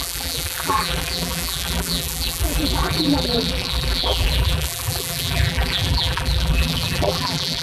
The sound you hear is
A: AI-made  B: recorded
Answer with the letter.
A